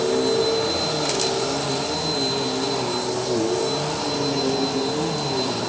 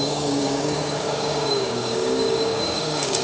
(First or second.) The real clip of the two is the first